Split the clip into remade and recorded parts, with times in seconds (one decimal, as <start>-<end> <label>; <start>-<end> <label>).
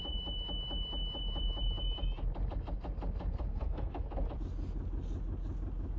0.0-3.5 recorded; 3.5-4.0 remade; 4.0-6.0 recorded